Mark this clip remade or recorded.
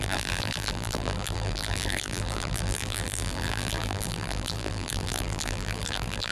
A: remade